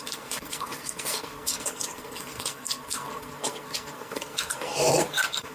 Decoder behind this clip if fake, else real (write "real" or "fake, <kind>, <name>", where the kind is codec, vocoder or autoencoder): fake, codec, SNAC